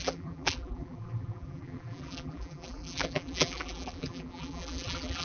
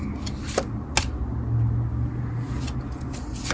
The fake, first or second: first